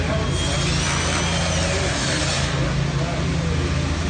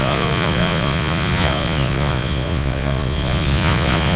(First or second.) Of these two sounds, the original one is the first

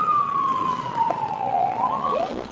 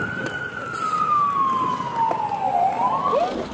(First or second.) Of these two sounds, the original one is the second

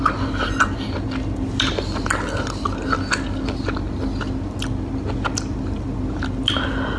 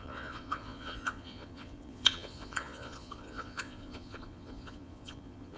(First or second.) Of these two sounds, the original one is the first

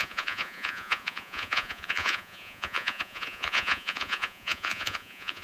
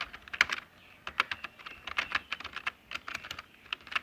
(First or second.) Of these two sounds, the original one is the second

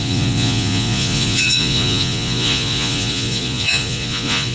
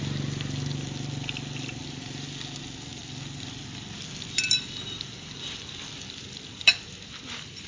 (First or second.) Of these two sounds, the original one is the second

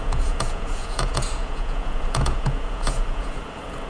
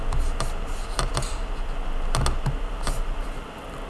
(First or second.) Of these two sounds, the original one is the second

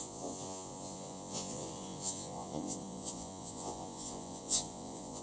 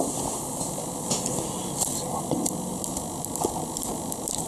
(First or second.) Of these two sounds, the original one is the second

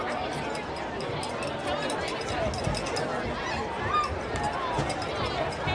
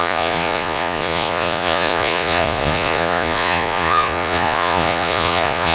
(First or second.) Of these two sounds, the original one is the first